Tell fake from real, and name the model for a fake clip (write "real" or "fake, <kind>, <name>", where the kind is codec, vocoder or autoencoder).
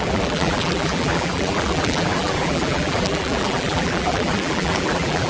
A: fake, vocoder, BigVGAN v2